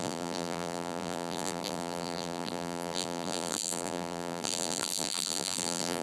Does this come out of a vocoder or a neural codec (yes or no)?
yes